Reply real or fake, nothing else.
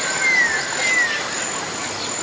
real